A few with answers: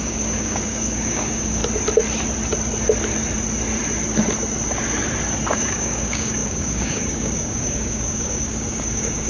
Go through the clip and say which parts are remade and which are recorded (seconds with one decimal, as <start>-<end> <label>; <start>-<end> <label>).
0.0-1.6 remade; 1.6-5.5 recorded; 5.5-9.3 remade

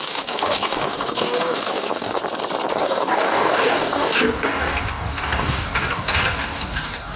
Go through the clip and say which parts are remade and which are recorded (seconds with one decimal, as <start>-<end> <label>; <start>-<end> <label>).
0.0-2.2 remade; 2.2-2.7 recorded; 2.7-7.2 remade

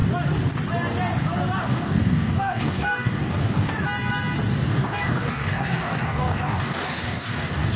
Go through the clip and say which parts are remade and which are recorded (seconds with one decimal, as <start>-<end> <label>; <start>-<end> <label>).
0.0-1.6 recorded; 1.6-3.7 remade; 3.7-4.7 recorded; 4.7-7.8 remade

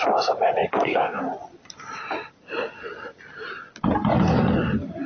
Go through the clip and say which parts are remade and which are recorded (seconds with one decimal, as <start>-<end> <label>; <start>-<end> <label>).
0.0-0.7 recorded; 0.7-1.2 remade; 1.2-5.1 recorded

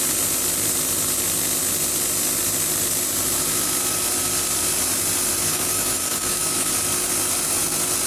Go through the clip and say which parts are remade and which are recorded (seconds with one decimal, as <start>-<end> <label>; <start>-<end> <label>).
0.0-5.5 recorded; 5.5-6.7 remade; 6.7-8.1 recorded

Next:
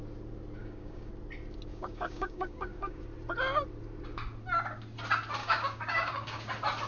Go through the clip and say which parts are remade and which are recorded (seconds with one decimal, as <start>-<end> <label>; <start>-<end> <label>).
0.0-0.6 recorded; 0.6-1.1 remade; 1.1-1.7 recorded; 1.7-3.0 remade; 3.0-5.4 recorded; 5.4-6.4 remade; 6.4-6.9 recorded